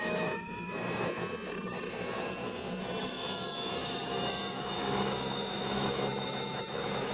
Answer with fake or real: fake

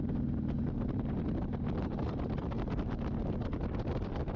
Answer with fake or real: real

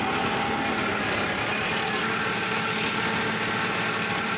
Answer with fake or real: real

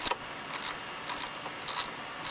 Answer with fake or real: real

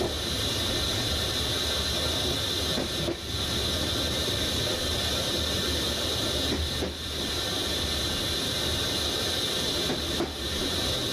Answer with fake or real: real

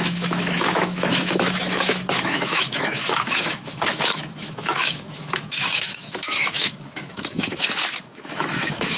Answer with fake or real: fake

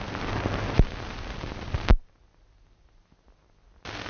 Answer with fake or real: real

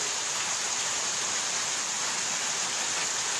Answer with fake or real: real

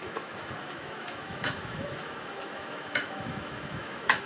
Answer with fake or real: fake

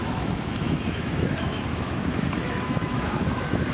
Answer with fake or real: fake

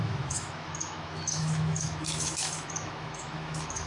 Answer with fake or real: fake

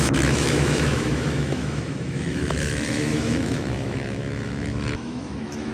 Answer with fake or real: fake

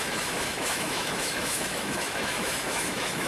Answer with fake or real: fake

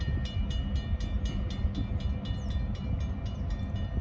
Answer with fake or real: real